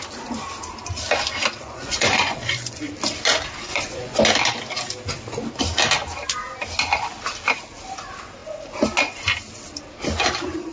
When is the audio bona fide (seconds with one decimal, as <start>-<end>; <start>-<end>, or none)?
0.0-1.6; 2.9-3.7; 4.2-10.7